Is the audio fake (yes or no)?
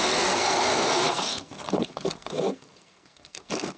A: yes